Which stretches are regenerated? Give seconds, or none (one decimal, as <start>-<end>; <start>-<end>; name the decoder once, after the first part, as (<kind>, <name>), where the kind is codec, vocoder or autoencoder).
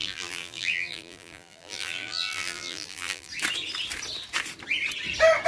0.0-3.3 (vocoder, BigVGAN v2)